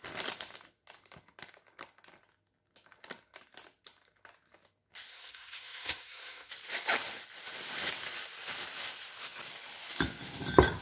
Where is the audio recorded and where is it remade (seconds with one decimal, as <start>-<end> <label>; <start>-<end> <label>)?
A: 0.0-5.1 recorded; 5.1-6.5 remade; 6.5-10.8 recorded